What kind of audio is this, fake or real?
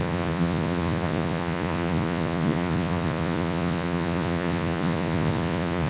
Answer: fake